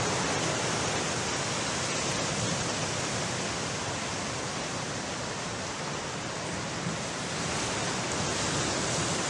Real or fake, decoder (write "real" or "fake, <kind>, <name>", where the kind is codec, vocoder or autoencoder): real